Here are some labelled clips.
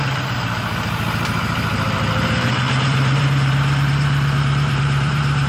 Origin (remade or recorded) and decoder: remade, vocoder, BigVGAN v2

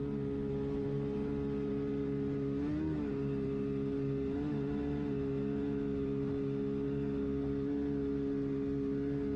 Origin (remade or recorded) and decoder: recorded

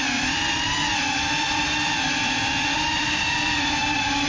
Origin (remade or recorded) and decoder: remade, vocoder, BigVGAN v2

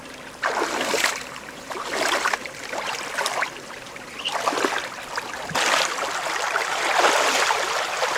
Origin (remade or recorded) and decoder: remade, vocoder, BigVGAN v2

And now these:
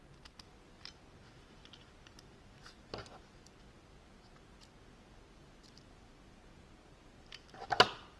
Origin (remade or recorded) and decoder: recorded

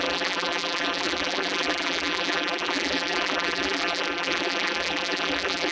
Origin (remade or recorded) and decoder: remade, vocoder, BigVGAN v2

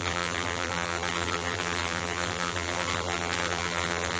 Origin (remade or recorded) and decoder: remade, vocoder, BigVGAN v2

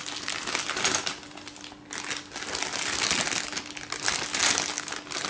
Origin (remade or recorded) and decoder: recorded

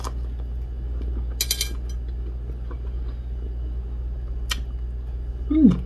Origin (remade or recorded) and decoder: recorded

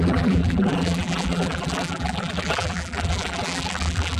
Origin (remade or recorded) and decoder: remade, vocoder, BigVGAN v2